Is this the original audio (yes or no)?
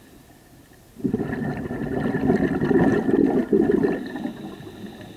yes